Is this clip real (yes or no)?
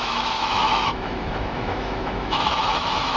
no